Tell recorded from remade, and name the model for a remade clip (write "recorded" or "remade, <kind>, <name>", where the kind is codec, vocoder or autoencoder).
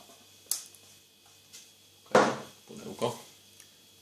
recorded